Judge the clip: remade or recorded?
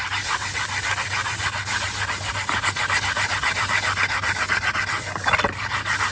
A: recorded